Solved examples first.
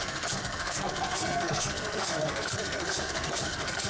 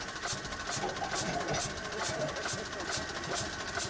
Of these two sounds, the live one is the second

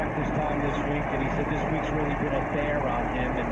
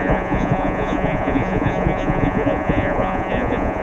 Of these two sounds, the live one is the first